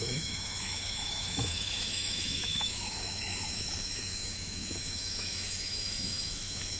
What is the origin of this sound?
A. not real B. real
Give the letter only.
A